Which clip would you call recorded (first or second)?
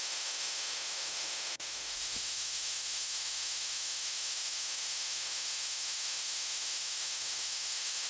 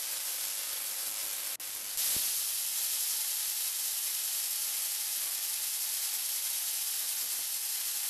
second